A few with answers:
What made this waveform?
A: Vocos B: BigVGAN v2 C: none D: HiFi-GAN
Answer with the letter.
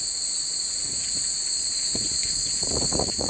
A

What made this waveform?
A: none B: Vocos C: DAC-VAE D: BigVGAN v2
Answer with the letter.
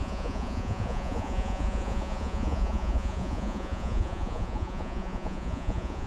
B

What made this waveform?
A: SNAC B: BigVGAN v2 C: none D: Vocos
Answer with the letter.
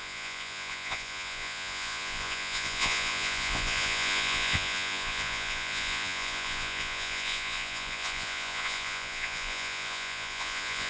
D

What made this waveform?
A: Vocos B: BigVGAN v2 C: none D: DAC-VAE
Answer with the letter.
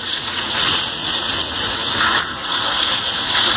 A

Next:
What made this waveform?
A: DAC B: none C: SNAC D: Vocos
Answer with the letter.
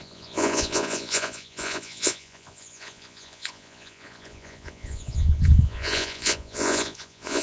D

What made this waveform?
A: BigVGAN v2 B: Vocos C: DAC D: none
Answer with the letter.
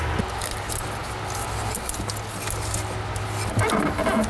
D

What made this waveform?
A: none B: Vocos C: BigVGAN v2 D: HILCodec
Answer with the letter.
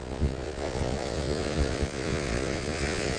B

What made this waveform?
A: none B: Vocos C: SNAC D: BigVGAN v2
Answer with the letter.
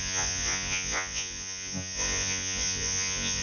B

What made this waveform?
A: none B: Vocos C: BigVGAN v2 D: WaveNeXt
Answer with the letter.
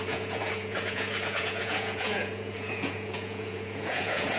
B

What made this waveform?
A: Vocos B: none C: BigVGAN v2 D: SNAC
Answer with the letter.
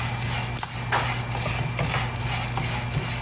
B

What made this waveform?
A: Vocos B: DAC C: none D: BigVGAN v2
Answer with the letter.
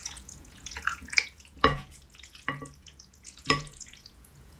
A